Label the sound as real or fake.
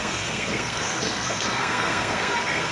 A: fake